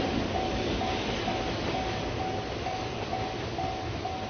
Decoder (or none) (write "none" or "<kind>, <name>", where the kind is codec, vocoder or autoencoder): none